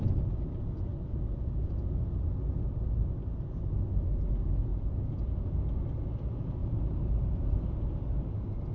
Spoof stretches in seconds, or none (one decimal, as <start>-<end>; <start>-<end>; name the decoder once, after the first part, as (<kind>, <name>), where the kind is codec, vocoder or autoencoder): 0.9-1.7 (vocoder, Vocos); 4.7-5.6; 6.6-7.5